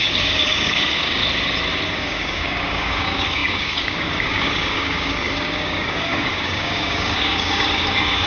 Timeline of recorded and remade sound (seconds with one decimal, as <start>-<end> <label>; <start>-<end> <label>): 0.0-1.2 remade; 1.2-1.9 recorded; 1.9-8.3 remade